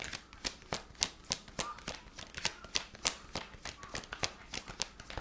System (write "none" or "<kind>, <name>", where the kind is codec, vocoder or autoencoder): none